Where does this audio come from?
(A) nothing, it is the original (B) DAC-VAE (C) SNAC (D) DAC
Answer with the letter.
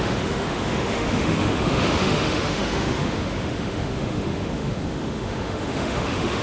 B